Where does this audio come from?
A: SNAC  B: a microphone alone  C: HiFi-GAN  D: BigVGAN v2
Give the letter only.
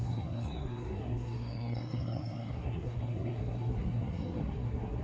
A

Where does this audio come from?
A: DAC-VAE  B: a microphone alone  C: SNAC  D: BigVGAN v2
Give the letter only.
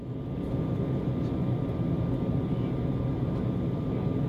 B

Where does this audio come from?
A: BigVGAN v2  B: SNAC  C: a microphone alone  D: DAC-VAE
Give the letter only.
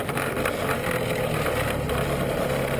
C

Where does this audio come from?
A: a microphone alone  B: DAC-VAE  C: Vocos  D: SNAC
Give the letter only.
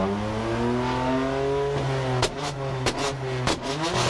A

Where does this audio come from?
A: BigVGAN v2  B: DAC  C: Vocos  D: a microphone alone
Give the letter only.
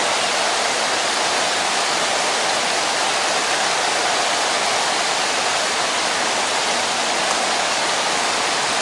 D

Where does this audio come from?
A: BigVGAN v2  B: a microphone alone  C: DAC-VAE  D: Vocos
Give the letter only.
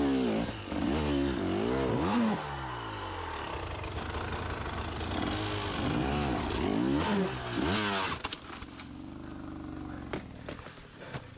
B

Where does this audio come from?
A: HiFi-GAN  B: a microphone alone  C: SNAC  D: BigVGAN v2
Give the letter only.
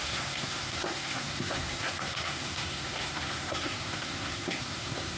C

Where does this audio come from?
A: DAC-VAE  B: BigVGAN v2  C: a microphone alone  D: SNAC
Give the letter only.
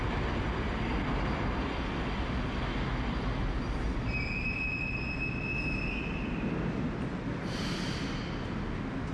C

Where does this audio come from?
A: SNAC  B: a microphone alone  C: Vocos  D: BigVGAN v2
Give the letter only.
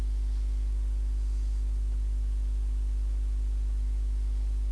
B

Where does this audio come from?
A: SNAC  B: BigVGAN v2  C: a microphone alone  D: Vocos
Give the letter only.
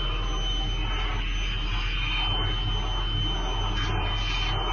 C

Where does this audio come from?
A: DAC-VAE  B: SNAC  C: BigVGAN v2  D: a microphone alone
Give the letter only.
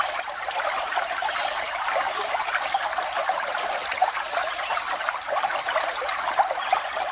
D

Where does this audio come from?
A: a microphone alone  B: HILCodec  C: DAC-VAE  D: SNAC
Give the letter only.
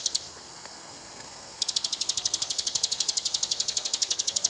D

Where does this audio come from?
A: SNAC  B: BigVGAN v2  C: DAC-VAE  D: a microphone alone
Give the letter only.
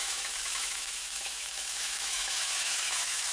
C